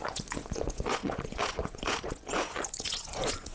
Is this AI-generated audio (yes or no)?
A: yes